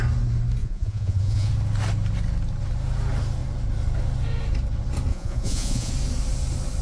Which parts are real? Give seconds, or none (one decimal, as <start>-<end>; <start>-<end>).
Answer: 0.0-0.6; 1.5-5.1; 5.9-6.8